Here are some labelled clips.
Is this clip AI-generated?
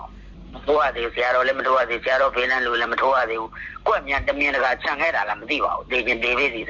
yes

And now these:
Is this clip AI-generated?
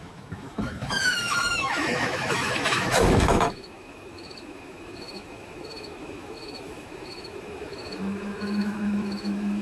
yes